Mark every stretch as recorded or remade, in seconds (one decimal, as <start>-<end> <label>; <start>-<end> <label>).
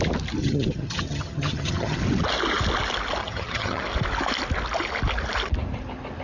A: 0.0-0.4 recorded; 0.4-2.0 remade; 2.0-3.2 recorded; 3.2-3.8 remade; 3.8-6.2 recorded